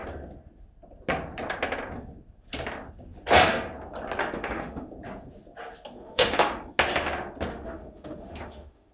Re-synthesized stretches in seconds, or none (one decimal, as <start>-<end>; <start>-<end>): 4.2-4.9; 6.0-6.6; 7.5-8.9

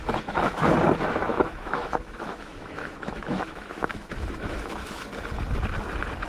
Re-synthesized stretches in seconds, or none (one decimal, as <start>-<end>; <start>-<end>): 0.0-0.7; 1.3-5.1